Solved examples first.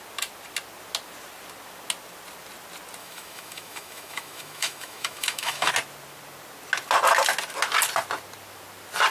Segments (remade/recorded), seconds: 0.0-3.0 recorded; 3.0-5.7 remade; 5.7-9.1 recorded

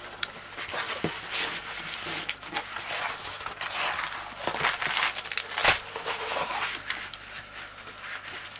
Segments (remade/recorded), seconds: 0.0-8.6 recorded

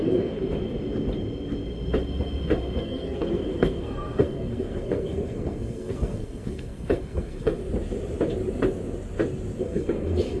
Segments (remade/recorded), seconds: 0.0-0.4 remade; 0.4-2.8 recorded; 2.8-7.6 remade; 7.6-9.6 recorded; 9.6-10.4 remade

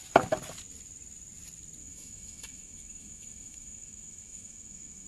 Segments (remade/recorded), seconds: 0.0-1.8 recorded; 1.8-5.1 remade

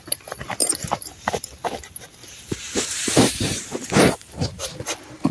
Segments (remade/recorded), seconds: 0.0-0.6 recorded; 0.6-1.6 remade; 1.6-2.1 recorded; 2.1-4.7 remade; 4.7-5.3 recorded

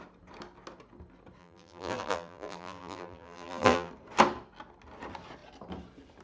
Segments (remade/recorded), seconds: 0.0-1.4 recorded; 1.4-3.9 remade; 3.9-6.2 recorded

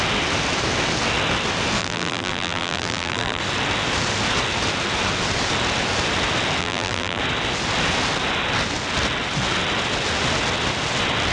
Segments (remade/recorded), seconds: 0.0-1.8 recorded; 1.8-3.4 remade; 3.4-6.6 recorded; 6.6-7.2 remade; 7.2-11.3 recorded

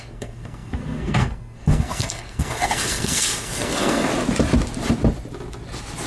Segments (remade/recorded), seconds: 0.0-4.1 remade; 4.1-6.1 recorded